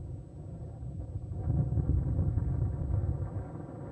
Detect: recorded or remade recorded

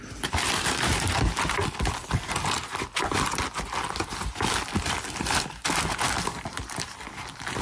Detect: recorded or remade recorded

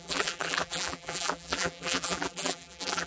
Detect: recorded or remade remade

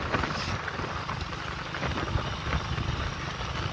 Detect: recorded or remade recorded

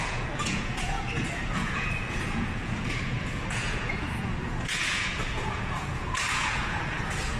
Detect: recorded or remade remade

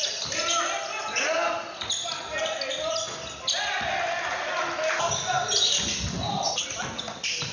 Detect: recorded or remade recorded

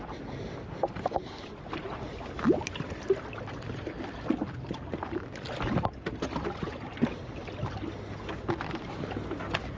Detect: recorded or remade recorded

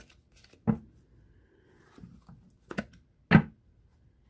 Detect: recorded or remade recorded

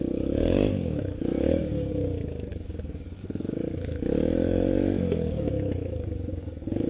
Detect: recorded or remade remade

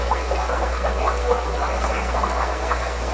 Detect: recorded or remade remade